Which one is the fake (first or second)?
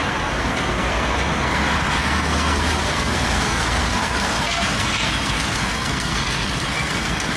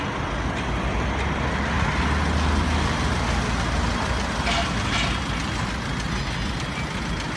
first